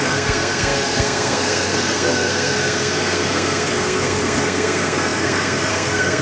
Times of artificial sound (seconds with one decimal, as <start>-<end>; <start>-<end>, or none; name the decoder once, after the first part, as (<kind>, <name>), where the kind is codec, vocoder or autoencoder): 0.0-6.2 (codec, SNAC)